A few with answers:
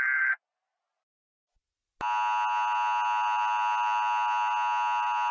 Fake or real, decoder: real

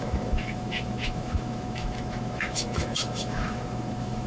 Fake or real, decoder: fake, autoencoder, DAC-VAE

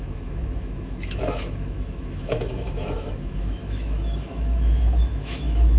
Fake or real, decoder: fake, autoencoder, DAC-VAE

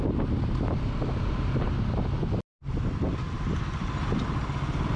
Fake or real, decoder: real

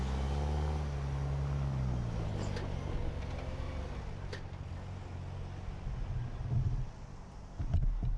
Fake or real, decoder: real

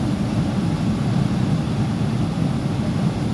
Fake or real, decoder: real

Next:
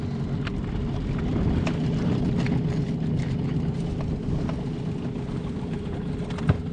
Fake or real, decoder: real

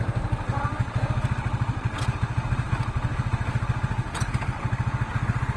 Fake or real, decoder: real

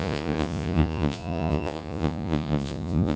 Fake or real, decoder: fake, vocoder, Vocos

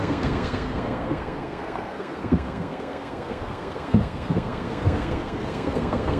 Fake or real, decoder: fake, codec, SNAC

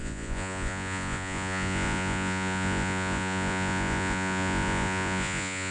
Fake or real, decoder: fake, vocoder, Vocos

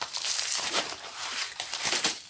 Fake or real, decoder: fake, vocoder, BigVGAN v2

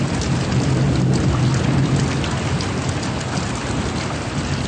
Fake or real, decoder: real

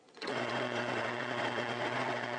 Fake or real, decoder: fake, vocoder, WaveNeXt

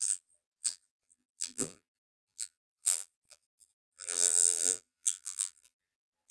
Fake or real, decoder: fake, vocoder, BigVGAN v2